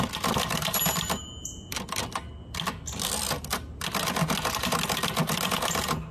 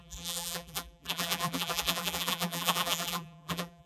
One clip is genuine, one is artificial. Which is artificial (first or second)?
second